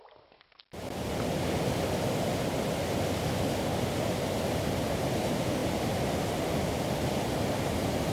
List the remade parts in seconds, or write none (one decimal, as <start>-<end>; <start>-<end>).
none